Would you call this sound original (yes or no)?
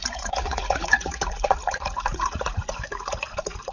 no